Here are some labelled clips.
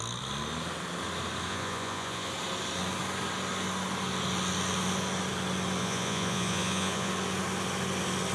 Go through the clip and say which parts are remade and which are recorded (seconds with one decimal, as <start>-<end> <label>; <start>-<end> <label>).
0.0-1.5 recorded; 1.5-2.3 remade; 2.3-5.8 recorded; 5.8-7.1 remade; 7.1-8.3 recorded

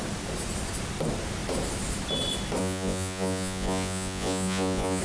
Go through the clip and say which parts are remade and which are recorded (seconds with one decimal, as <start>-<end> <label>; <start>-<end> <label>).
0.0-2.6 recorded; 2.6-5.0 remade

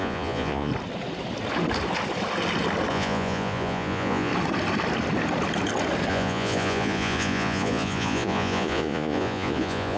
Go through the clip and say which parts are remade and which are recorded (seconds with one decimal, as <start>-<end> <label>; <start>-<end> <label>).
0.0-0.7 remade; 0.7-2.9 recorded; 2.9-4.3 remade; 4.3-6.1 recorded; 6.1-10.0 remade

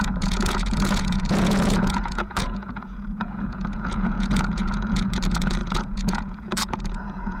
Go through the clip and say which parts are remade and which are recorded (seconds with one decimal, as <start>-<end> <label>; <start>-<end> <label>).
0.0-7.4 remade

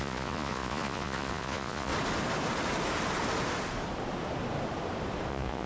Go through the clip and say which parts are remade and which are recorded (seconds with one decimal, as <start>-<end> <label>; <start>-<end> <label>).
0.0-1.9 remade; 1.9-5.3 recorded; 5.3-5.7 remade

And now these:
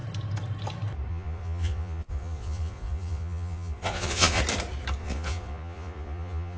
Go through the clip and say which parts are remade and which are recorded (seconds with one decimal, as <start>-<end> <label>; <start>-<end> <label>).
0.0-1.1 recorded; 1.1-4.4 remade; 4.4-5.0 recorded; 5.0-6.6 remade